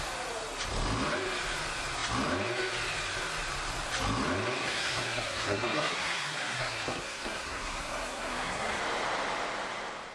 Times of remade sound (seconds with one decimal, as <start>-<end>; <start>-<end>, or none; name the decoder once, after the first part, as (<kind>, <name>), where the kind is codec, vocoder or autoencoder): 4.6-8.8 (codec, SNAC)